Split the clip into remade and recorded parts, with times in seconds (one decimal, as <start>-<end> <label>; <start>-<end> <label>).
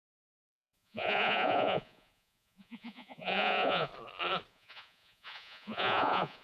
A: 0.0-3.9 remade; 3.9-4.5 recorded; 4.5-6.4 remade